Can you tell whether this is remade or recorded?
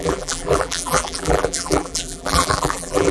remade